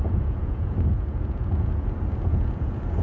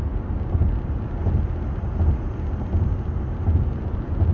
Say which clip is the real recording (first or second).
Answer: second